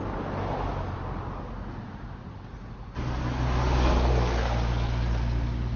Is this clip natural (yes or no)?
yes